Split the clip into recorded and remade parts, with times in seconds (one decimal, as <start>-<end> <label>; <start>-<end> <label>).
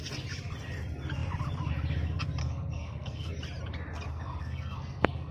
0.0-2.4 recorded; 2.4-3.3 remade; 3.3-4.1 recorded; 4.1-5.3 remade